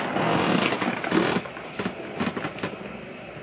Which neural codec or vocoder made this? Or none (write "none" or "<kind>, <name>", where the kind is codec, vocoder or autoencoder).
none